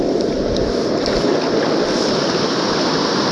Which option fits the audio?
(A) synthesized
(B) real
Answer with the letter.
B